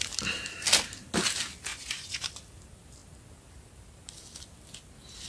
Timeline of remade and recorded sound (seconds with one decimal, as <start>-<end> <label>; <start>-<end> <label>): 0.0-1.7 recorded; 1.7-2.2 remade; 2.2-5.3 recorded